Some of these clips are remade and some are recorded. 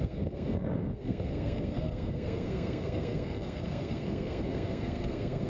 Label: remade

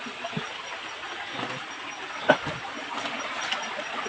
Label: recorded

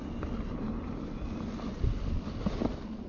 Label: recorded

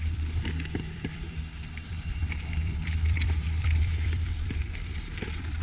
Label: remade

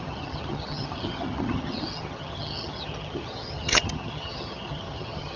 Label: remade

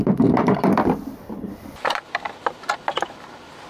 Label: remade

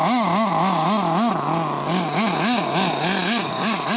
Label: recorded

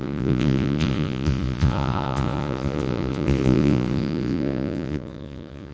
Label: remade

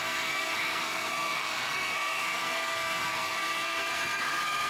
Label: remade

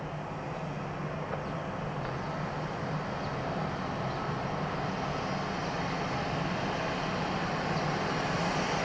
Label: recorded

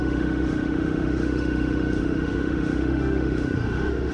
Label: remade